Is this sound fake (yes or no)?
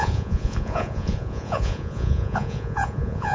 yes